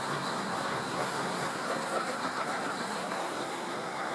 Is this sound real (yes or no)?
no